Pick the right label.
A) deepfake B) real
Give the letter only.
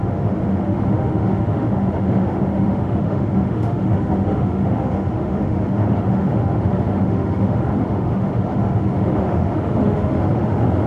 A